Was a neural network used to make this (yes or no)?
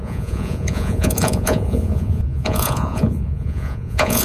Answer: yes